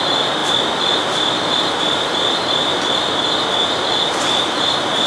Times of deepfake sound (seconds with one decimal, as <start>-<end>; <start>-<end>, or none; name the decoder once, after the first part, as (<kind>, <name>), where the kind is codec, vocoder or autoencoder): 0.0-0.4 (vocoder, BigVGAN v2); 1.5-2.7; 3.6-5.1